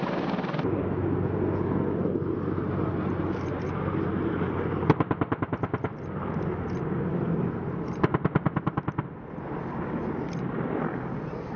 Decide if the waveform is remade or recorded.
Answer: recorded